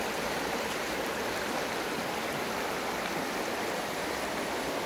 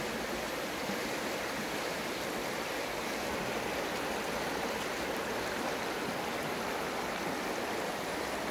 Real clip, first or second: second